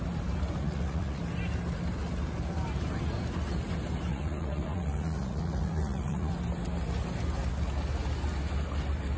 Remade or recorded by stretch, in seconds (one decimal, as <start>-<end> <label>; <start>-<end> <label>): 0.0-0.6 recorded; 0.6-1.2 remade; 1.2-4.1 recorded; 4.1-6.3 remade; 6.3-9.2 recorded